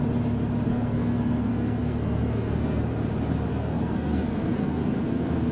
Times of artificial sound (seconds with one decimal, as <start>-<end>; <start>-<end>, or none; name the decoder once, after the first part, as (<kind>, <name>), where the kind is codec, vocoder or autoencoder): 0.7-2.8 (codec, SNAC); 3.5-5.5